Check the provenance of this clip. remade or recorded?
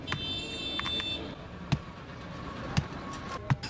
recorded